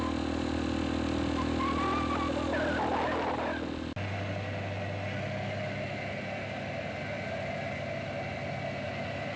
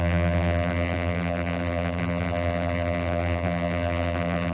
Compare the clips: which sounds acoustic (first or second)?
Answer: first